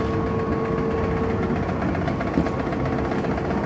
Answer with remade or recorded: recorded